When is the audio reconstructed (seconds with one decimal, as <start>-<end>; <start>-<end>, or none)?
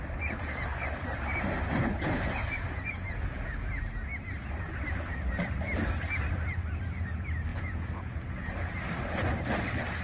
2.4-3.8; 7.5-8.7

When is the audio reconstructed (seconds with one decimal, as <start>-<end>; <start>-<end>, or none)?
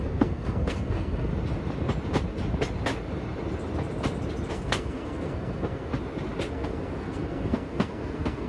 0.0-1.3; 4.5-5.9; 6.5-8.5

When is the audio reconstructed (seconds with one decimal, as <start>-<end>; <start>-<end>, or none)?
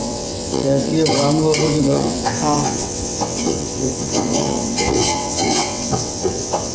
0.0-0.9; 1.8-6.7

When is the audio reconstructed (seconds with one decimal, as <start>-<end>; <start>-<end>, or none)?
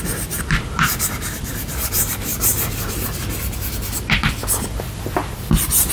0.0-2.3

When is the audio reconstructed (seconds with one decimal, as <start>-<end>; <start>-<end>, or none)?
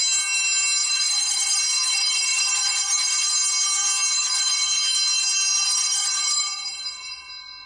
0.8-3.3; 4.1-4.8; 5.5-7.3